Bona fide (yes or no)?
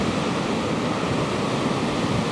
yes